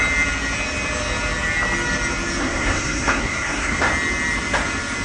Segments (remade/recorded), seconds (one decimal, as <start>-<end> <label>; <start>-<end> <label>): 0.0-2.4 recorded; 2.4-3.9 remade; 3.9-5.0 recorded